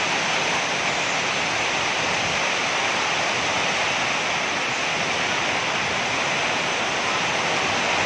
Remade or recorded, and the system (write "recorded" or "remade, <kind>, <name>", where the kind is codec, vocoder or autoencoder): recorded